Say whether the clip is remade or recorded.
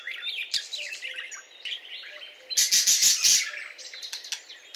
recorded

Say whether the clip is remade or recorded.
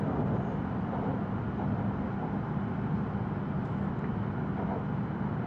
recorded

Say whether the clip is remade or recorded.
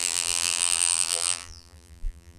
remade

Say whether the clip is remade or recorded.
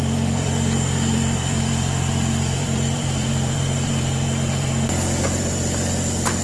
remade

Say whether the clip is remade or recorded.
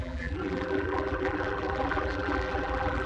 remade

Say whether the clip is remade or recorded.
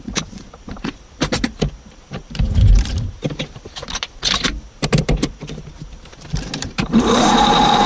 remade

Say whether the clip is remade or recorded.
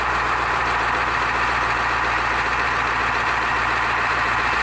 remade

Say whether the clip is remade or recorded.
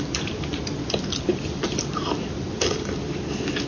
remade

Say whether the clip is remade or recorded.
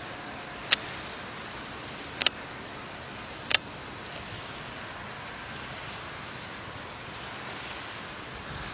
remade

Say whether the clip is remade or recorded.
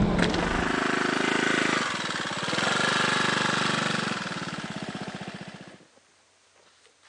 recorded